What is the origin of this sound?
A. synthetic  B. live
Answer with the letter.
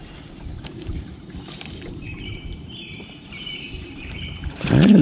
A